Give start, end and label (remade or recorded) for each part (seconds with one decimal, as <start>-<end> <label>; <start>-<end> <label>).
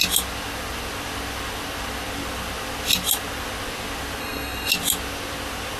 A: 0.0-4.2 recorded; 4.2-4.7 remade; 4.7-5.8 recorded